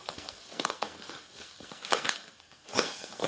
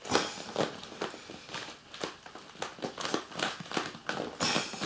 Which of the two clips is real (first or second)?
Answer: second